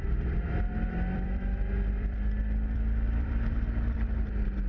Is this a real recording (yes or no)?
no